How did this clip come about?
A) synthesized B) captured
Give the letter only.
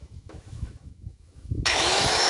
A